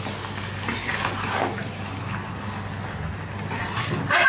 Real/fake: real